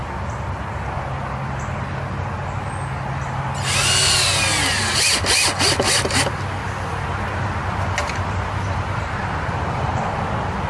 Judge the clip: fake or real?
real